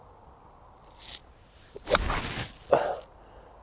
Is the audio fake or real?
real